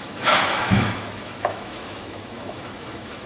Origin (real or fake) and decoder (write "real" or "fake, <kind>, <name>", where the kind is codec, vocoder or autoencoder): fake, autoencoder, DAC-VAE